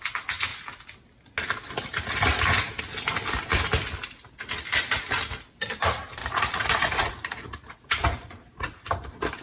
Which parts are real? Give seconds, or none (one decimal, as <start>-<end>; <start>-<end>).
0.0-6.2; 8.9-9.4